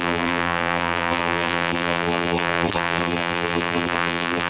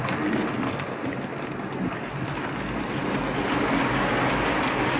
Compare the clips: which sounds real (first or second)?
second